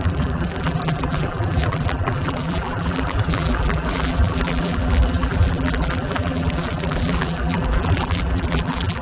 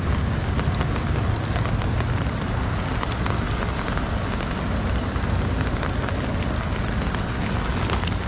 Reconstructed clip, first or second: first